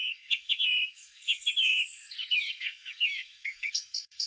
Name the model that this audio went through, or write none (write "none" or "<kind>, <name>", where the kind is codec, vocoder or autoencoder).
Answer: codec, SNAC